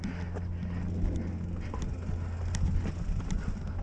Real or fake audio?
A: real